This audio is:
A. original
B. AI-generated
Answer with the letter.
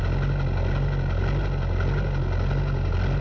A